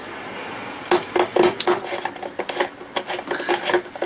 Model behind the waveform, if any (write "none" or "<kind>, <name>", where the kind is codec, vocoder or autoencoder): none